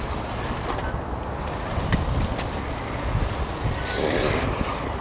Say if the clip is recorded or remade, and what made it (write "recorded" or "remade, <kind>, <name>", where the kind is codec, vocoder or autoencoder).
recorded